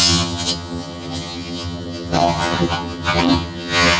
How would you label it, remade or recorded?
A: remade